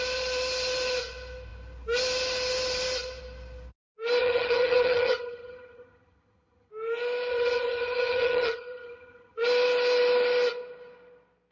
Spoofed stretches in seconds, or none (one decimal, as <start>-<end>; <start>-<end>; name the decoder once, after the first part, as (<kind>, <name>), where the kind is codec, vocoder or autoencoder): 4.2-6.7 (vocoder, HiFi-GAN); 7.3-9.4